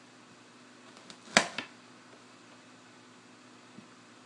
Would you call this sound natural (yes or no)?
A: yes